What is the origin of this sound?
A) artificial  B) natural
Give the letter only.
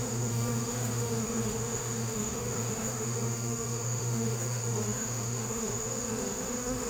A